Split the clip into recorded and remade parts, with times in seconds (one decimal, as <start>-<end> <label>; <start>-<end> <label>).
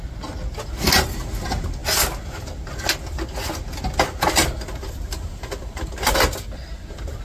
0.0-7.2 recorded